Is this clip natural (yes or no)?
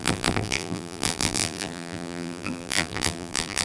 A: no